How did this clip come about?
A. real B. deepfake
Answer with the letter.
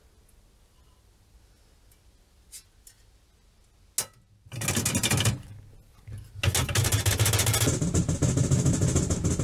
A